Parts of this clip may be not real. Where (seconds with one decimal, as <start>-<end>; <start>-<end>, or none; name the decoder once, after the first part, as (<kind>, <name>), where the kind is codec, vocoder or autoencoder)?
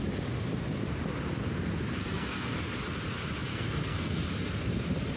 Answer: 2.0-2.6 (codec, SNAC); 3.5-4.2